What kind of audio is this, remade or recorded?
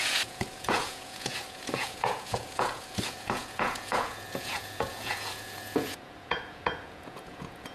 remade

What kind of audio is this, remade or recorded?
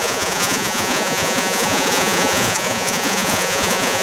remade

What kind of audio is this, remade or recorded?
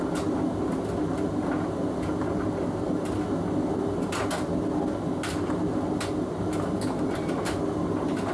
recorded